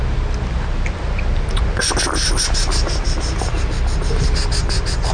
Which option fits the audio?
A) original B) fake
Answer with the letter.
A